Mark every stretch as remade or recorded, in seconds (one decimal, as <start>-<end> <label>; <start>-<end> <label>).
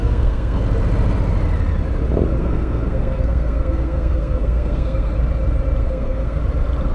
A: 0.0-0.6 remade; 0.6-2.4 recorded; 2.4-5.1 remade; 5.1-5.8 recorded; 5.8-6.4 remade; 6.4-6.9 recorded